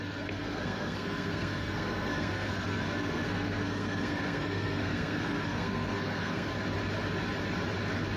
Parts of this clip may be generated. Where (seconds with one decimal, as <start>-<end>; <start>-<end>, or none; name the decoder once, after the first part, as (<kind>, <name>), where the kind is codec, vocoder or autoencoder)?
0.0-6.5 (codec, SNAC)